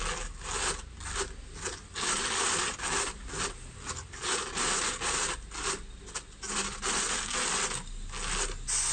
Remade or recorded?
recorded